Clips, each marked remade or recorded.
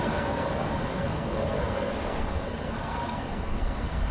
remade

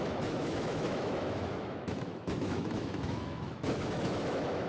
remade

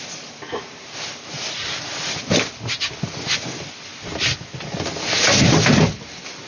recorded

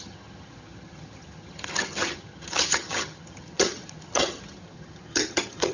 remade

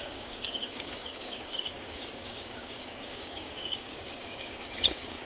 remade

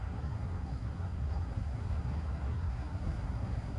remade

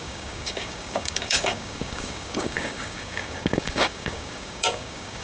remade